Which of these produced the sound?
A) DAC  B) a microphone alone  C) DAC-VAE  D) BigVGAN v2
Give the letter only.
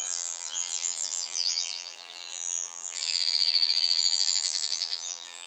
D